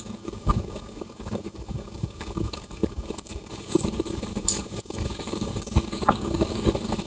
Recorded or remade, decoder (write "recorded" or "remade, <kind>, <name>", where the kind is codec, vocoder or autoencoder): remade, codec, DAC